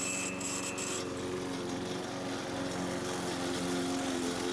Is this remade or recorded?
recorded